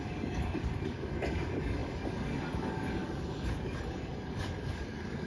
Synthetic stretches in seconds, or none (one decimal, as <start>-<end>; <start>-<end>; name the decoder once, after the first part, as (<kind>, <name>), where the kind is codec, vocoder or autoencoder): 0.0-5.3 (codec, DAC)

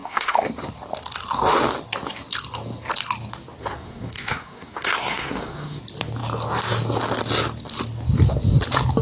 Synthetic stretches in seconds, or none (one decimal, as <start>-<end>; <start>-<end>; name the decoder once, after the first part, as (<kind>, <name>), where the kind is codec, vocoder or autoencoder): 0.0-0.5 (codec, SNAC); 3.6-5.8

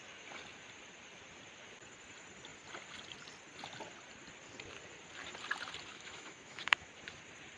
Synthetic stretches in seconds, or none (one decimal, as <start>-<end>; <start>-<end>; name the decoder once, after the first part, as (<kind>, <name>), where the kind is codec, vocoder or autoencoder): 5.9-6.9 (autoencoder, DAC-VAE)

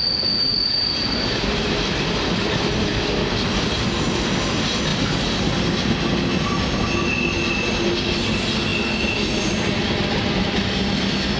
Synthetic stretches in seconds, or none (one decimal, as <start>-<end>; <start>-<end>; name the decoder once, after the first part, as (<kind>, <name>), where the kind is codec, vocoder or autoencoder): 0.6-2.5 (vocoder, BigVGAN v2)

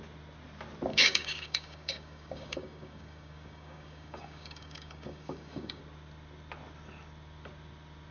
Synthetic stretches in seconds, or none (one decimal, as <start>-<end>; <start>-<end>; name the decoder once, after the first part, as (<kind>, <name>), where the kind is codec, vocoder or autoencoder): 0.9-5.8 (codec, DAC)